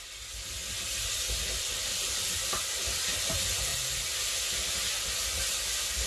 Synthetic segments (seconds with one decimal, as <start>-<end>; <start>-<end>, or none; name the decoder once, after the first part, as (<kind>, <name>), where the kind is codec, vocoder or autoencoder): 0.0-6.1 (vocoder, BigVGAN v2)